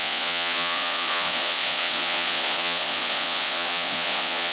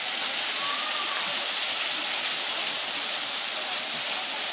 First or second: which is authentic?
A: second